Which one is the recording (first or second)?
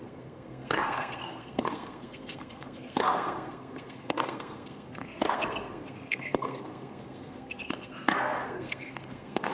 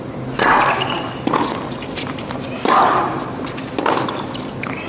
second